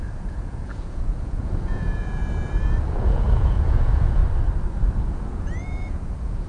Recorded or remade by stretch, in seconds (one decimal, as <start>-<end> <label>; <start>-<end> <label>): 0.0-2.2 remade; 2.2-2.9 recorded; 2.9-4.2 remade; 4.2-5.1 recorded; 5.1-6.5 remade